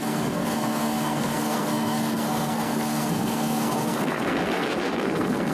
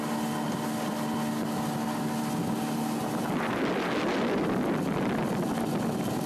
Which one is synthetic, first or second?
first